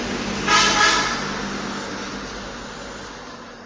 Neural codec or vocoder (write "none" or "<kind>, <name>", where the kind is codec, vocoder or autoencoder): none